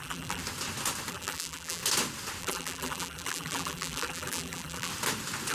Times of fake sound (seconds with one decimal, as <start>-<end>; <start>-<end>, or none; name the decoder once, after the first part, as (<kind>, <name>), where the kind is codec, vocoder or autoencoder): 0.0-0.4 (vocoder, BigVGAN v2); 1.1-1.8; 2.4-4.9